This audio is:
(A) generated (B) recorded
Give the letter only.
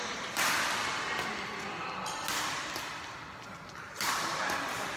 B